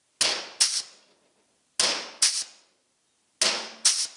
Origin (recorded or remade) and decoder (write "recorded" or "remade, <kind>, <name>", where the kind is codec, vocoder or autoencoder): recorded